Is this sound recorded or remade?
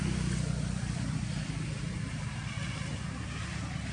recorded